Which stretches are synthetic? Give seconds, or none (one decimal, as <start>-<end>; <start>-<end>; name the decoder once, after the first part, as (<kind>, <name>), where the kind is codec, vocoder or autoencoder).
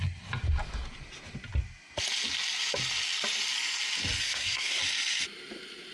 4.2-4.8 (codec, SNAC)